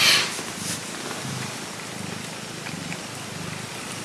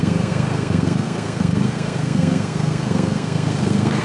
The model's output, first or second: second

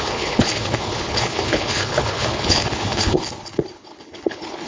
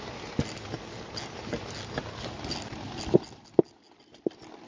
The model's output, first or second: first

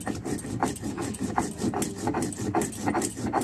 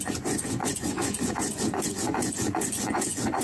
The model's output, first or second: second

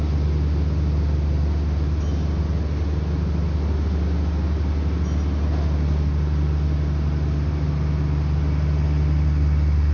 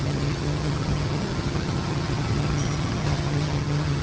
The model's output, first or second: second